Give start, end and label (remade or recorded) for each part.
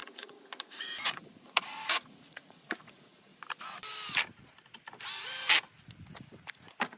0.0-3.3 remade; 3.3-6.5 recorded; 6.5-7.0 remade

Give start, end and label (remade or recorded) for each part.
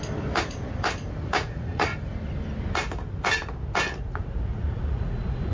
0.0-1.2 recorded; 1.2-1.9 remade; 1.9-4.0 recorded; 4.0-5.5 remade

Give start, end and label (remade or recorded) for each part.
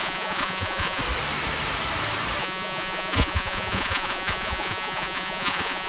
0.0-1.0 remade; 1.0-2.4 recorded; 2.4-5.9 remade